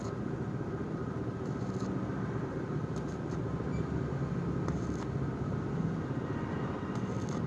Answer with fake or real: real